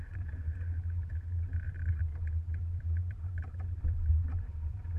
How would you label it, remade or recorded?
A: remade